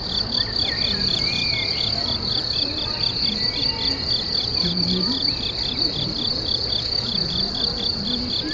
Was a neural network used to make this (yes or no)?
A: no